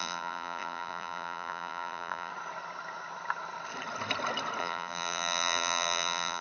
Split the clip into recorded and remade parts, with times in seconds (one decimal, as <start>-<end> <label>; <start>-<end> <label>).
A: 0.0-2.3 remade; 2.3-4.6 recorded; 4.6-6.4 remade

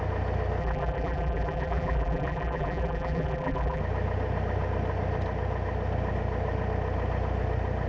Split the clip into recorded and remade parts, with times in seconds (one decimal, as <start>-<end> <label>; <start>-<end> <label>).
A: 0.0-0.6 recorded; 0.6-3.8 remade; 3.8-7.9 recorded

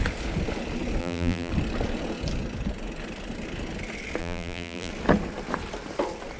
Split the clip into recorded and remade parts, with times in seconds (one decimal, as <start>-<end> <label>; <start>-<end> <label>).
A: 0.0-1.0 recorded; 1.0-1.5 remade; 1.5-4.2 recorded; 4.2-4.9 remade; 4.9-6.4 recorded

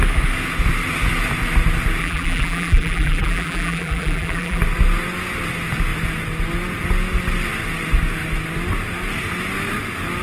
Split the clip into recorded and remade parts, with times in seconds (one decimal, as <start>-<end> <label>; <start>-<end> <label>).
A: 0.0-2.0 recorded; 2.0-4.6 remade; 4.6-10.2 recorded

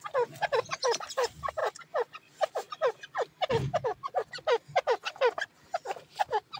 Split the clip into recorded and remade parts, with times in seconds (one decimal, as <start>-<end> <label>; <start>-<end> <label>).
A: 0.0-6.6 recorded